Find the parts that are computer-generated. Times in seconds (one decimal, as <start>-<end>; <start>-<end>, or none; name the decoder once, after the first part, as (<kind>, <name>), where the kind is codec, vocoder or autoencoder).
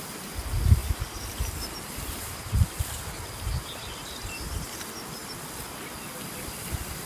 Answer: none